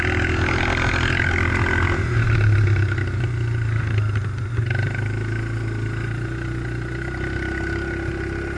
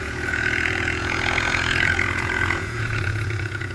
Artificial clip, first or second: second